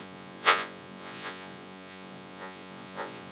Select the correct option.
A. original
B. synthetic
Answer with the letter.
B